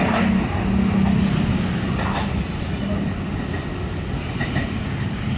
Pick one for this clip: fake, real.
real